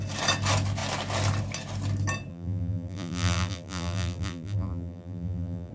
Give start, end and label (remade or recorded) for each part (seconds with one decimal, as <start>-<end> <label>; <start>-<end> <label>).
0.0-2.3 recorded; 2.3-5.7 remade